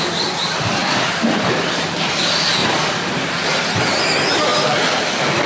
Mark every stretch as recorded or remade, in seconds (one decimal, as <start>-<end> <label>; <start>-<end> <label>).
0.0-0.8 recorded; 0.8-2.2 remade; 2.2-2.6 recorded; 2.6-3.7 remade; 3.7-4.5 recorded; 4.5-5.5 remade